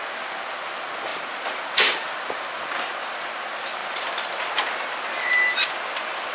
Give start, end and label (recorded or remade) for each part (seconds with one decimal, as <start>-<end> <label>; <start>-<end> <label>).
0.0-6.3 recorded